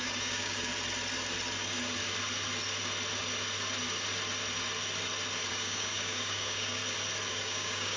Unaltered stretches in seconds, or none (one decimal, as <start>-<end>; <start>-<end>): 0.7-5.5; 6.8-7.3